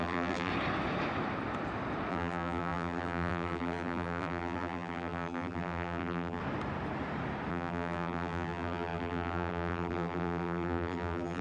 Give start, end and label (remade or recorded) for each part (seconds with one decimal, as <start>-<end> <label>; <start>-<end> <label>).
0.0-0.5 remade; 0.5-2.1 recorded; 2.1-6.4 remade; 6.4-7.5 recorded; 7.5-11.4 remade

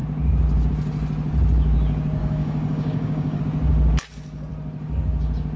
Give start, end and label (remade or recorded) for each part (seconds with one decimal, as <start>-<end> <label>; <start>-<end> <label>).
0.0-2.2 recorded; 2.2-3.4 remade; 3.4-5.6 recorded

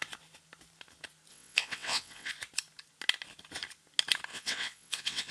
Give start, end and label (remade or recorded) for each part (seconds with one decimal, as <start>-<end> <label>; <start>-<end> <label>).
0.0-1.3 recorded; 1.3-2.3 remade; 2.3-4.3 recorded; 4.3-5.3 remade

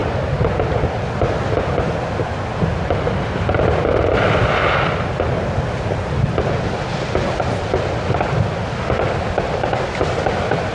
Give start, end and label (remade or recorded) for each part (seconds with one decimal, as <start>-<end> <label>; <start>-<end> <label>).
0.0-10.7 recorded

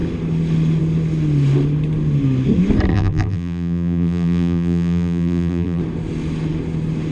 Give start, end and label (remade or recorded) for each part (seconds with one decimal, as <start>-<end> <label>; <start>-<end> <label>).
0.0-2.9 recorded; 2.9-5.8 remade; 5.8-7.1 recorded

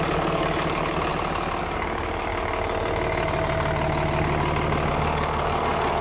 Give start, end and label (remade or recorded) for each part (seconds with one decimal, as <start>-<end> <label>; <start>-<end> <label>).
0.0-1.1 remade; 1.1-1.6 recorded; 1.6-2.3 remade; 2.3-4.9 recorded; 4.9-6.0 remade

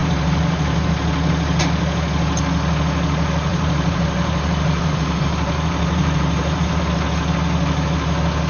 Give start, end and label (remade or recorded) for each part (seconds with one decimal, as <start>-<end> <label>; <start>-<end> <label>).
0.0-0.9 remade; 0.9-3.5 recorded; 3.5-6.8 remade; 6.8-8.5 recorded